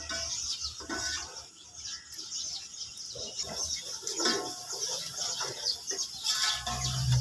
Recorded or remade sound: recorded